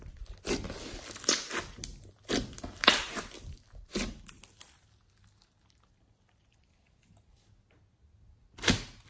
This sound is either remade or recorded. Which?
recorded